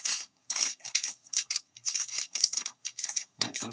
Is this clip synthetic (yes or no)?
yes